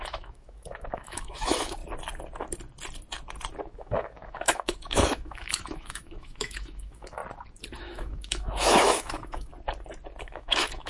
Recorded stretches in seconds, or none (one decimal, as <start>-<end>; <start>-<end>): 1.8-3.6; 7.2-7.8; 9.5-10.2